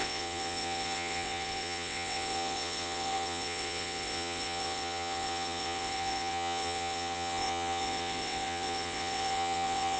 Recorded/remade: remade